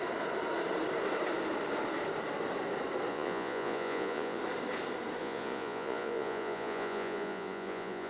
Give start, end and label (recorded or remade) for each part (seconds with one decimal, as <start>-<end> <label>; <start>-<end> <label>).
0.0-3.1 recorded; 3.1-4.4 remade; 4.4-5.2 recorded; 5.2-8.1 remade

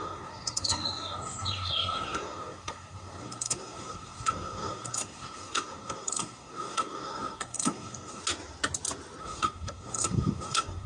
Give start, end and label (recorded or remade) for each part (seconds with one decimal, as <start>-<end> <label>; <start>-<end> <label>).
0.0-8.2 remade; 8.2-9.2 recorded; 9.2-10.9 remade

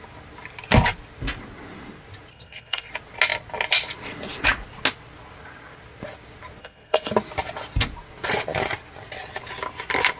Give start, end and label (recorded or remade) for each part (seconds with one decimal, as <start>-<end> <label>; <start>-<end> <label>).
0.0-2.3 recorded; 2.3-2.9 remade; 2.9-6.6 recorded; 6.6-7.1 remade; 7.1-10.2 recorded

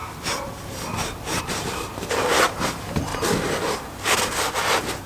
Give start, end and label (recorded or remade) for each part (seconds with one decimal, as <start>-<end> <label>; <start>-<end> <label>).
0.0-1.4 recorded; 1.4-3.1 remade; 3.1-4.6 recorded; 4.6-5.1 remade

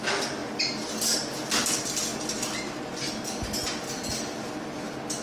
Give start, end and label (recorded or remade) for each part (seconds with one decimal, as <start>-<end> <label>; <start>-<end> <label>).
0.0-5.2 recorded

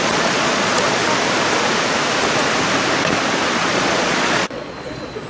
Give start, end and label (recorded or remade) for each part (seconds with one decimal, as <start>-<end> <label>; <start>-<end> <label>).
0.0-1.0 remade; 1.0-3.6 recorded; 3.6-5.3 remade

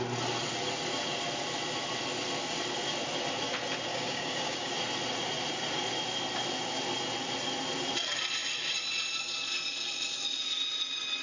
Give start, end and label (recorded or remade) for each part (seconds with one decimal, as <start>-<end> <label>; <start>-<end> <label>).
0.0-3.9 recorded; 3.9-4.7 remade; 4.7-11.2 recorded